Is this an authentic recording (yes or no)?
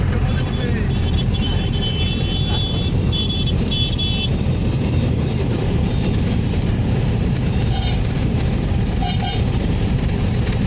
no